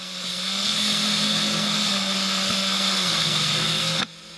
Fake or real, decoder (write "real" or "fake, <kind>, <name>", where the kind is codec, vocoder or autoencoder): fake, codec, SNAC